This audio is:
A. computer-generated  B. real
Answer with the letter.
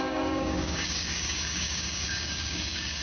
A